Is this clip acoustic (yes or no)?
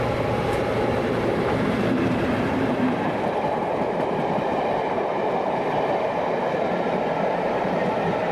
no